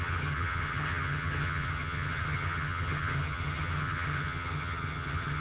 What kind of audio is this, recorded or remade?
remade